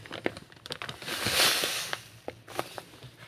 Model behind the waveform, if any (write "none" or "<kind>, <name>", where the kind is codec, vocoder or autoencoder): none